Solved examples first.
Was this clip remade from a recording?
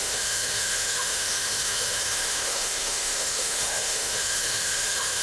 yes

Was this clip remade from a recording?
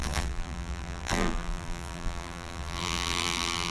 yes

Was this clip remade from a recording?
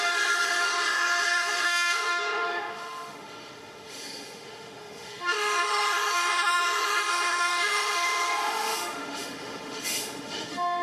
yes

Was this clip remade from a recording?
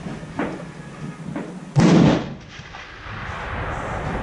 no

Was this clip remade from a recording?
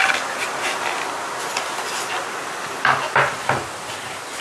no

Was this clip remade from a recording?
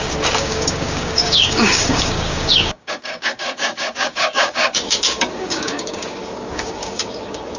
yes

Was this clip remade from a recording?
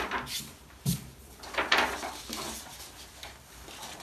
no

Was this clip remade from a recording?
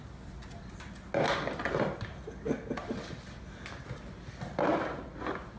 no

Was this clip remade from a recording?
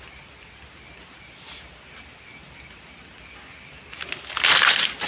no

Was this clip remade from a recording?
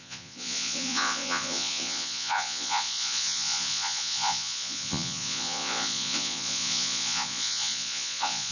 yes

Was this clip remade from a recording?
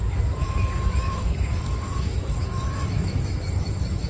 yes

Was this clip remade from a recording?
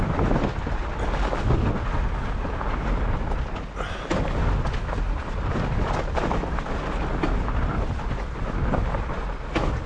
no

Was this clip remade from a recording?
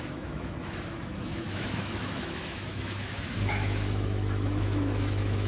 yes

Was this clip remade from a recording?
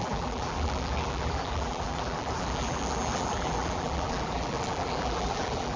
yes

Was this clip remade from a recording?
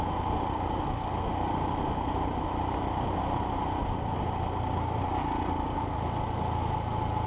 no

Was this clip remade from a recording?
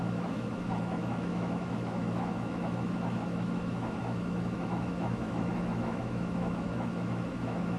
yes